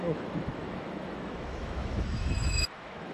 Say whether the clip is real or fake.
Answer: fake